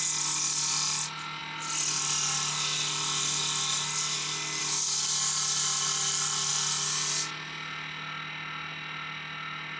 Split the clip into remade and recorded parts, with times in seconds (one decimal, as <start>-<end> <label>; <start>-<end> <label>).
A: 0.0-9.8 recorded